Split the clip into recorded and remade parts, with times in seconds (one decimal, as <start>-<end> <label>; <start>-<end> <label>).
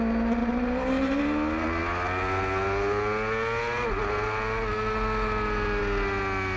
0.0-0.4 recorded; 0.4-1.2 remade; 1.2-6.6 recorded